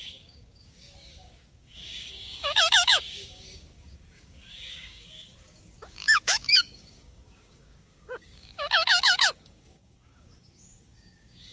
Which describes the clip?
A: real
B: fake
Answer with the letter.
B